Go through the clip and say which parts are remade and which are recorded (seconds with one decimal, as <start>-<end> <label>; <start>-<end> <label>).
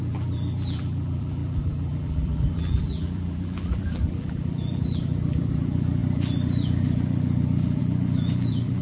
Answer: 0.0-8.8 remade